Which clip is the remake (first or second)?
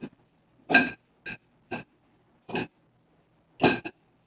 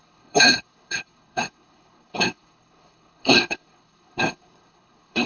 second